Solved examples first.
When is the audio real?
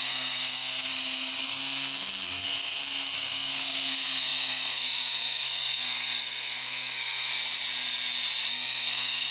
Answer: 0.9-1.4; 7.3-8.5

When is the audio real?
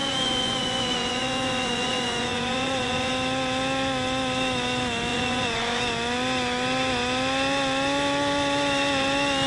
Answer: 3.1-5.1; 5.8-9.5